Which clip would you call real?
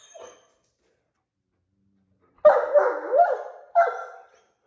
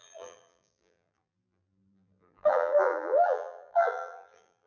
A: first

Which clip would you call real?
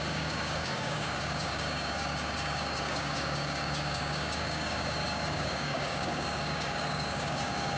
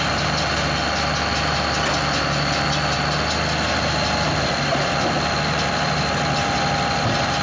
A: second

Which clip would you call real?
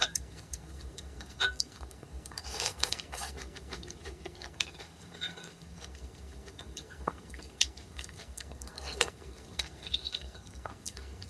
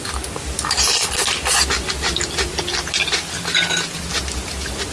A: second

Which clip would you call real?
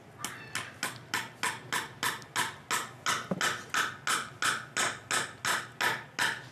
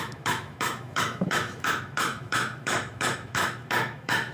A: first